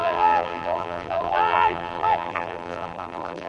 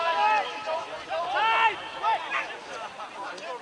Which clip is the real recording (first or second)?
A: second